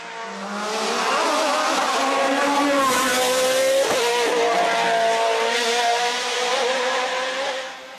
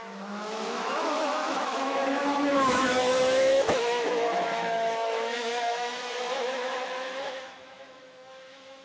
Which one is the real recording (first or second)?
first